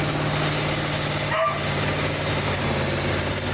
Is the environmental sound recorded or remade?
recorded